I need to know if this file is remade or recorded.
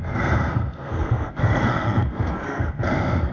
remade